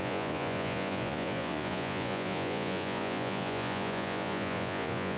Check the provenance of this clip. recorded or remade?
remade